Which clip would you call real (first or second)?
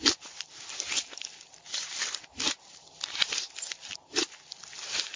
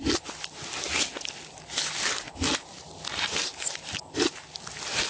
second